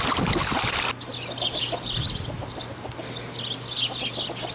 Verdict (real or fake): real